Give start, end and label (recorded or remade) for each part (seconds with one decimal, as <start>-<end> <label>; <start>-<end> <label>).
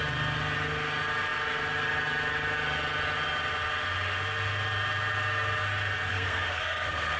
0.0-6.1 recorded; 6.1-7.2 remade